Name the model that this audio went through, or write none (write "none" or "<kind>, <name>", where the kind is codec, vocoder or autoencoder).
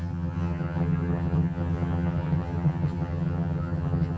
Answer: vocoder, HiFi-GAN